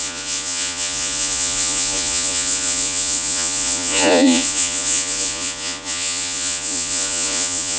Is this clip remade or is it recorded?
remade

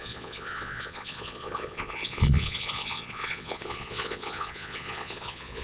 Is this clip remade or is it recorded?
remade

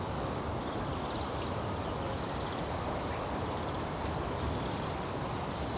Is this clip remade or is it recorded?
recorded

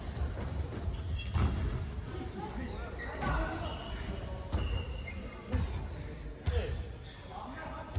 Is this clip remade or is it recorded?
recorded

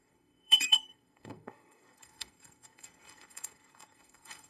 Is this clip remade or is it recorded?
remade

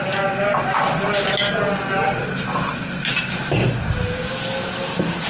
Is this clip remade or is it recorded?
recorded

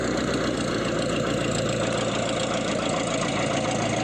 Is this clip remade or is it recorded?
recorded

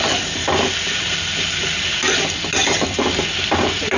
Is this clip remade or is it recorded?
recorded